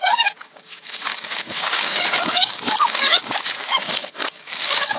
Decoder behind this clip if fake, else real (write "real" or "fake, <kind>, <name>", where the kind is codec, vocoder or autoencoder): fake, codec, DAC